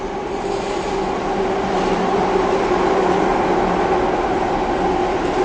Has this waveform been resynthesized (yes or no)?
no